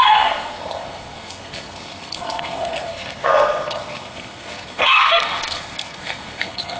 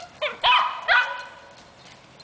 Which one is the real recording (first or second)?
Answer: second